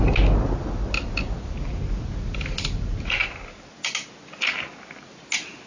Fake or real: real